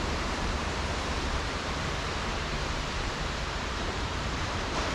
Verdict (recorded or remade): remade